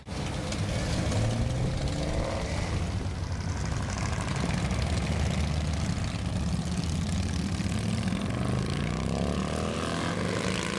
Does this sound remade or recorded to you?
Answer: recorded